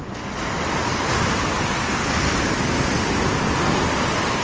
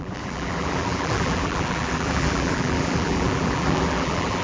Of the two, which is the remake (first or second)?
second